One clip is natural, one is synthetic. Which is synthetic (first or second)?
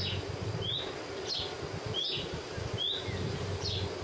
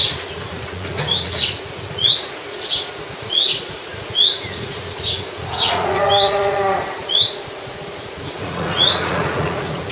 second